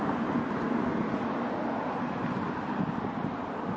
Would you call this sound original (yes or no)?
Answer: yes